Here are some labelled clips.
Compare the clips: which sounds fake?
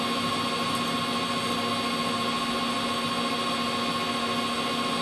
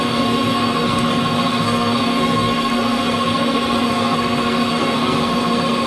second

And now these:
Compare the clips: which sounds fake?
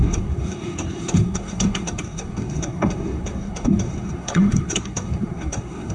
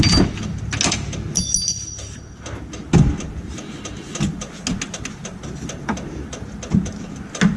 first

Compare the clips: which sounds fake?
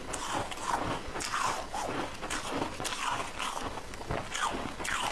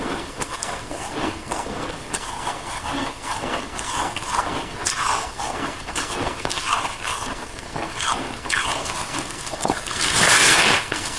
second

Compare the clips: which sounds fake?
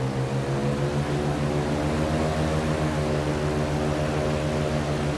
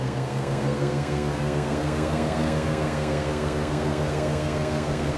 second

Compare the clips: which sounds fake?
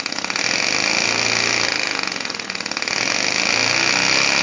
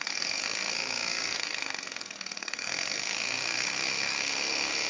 second